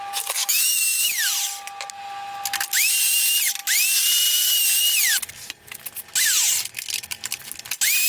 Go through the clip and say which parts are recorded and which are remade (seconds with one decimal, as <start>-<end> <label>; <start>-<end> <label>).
0.0-0.4 recorded; 0.4-1.1 remade; 1.1-8.1 recorded